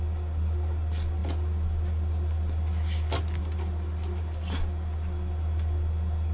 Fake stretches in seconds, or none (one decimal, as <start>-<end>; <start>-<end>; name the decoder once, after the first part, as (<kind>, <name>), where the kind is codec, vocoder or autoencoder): none